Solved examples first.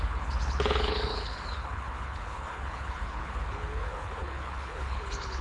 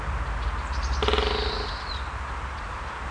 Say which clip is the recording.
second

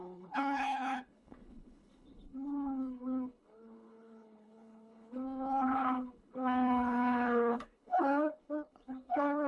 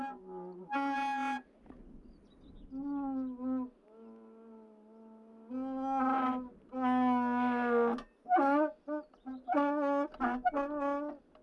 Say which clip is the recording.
second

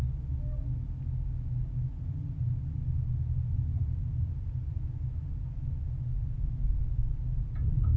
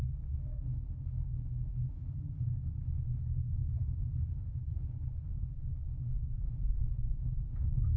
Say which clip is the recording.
first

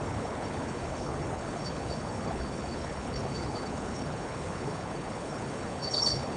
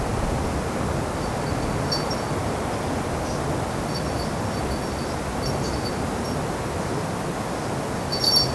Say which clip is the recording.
second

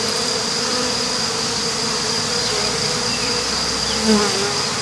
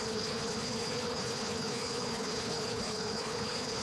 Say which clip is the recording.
first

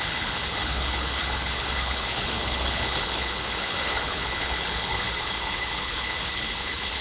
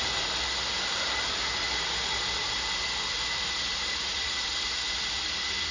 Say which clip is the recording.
second